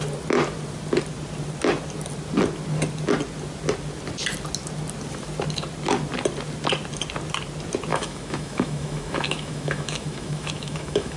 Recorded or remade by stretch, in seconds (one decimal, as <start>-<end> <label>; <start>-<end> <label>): 0.0-7.9 recorded; 7.9-11.2 remade